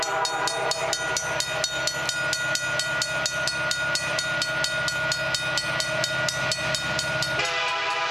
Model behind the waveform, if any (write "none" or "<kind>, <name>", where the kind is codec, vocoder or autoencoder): none